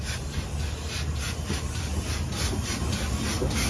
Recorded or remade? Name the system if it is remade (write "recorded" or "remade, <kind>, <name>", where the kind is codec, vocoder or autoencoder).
recorded